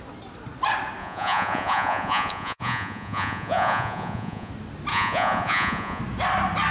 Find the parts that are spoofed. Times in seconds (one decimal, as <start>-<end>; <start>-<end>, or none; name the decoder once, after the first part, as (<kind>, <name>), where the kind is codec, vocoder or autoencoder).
1.0-4.5 (vocoder, Vocos); 4.9-6.0